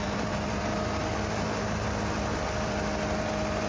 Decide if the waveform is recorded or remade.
remade